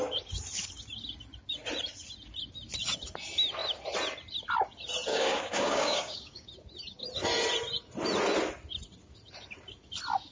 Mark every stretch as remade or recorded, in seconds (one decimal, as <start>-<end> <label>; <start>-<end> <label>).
0.0-5.1 recorded; 5.1-6.5 remade; 6.5-10.3 recorded